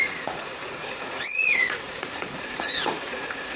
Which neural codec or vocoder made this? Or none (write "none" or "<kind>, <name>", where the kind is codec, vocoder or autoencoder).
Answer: vocoder, Vocos